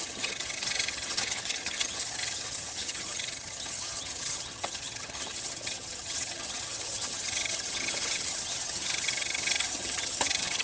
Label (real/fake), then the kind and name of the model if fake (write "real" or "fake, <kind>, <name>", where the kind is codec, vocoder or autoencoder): fake, vocoder, HiFi-GAN